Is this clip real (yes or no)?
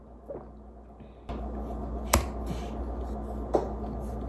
yes